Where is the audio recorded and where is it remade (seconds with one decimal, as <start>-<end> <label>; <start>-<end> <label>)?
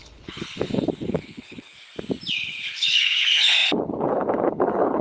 0.0-1.7 remade; 1.7-2.3 recorded; 2.3-5.0 remade